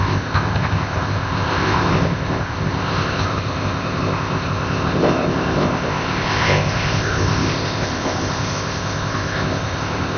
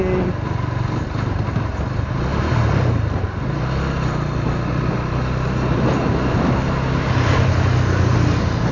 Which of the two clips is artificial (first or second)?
first